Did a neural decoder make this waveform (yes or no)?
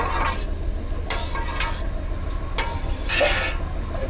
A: no